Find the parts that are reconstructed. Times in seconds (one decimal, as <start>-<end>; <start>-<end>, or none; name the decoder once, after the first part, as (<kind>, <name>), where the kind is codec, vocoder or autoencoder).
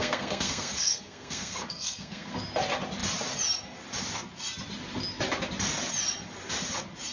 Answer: 0.0-2.3 (codec, SNAC)